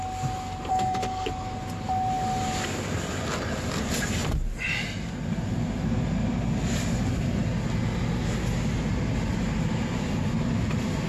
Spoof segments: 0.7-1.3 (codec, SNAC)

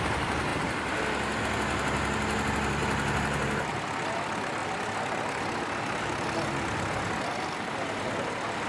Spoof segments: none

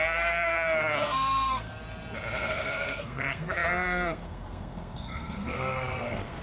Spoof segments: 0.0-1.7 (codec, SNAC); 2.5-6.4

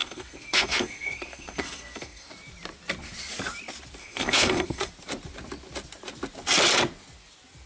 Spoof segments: 0.0-2.3 (codec, SNAC); 4.0-4.9

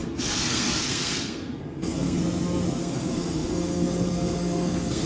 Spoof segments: 0.0-2.2 (codec, SNAC); 2.8-5.1

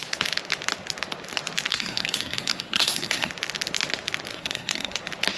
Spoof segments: 1.7-3.3 (codec, SNAC); 4.3-5.0